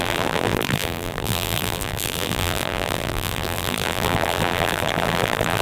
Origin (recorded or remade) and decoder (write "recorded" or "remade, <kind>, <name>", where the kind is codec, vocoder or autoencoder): remade, vocoder, BigVGAN v2